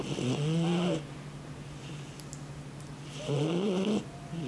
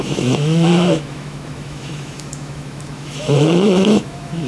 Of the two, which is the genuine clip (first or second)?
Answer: first